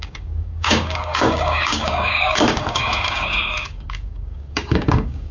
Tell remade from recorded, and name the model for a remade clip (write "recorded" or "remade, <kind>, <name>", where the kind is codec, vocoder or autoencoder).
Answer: remade, codec, DAC